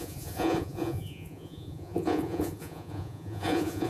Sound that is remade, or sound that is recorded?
remade